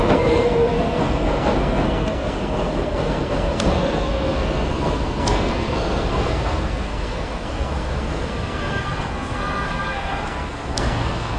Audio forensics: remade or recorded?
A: remade